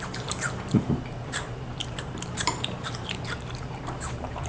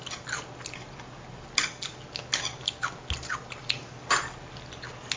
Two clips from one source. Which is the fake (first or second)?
first